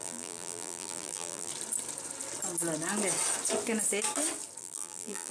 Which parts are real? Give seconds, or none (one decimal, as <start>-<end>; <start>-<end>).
1.5-4.6